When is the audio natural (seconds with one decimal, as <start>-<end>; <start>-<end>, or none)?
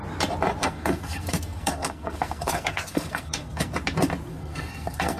0.0-0.6; 3.7-4.3